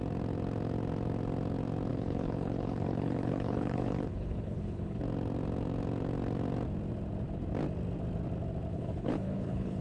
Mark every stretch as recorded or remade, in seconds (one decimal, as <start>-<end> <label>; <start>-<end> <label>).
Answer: 0.0-1.9 recorded; 1.9-5.0 remade; 5.0-8.7 recorded; 8.7-9.8 remade